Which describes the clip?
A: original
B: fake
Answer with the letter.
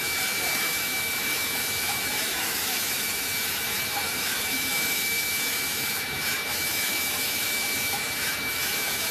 B